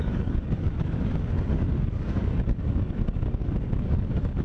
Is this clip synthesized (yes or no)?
yes